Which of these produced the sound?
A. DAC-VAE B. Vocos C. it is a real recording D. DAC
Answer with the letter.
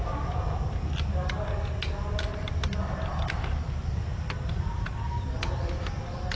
C